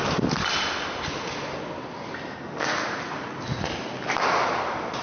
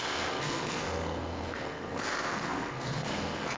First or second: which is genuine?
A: first